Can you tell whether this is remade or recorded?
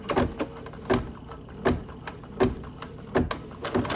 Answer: recorded